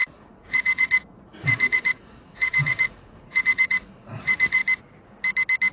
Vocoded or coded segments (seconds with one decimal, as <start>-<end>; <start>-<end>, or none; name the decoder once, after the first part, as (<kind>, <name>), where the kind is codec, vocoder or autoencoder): 0.0-4.6 (vocoder, Vocos)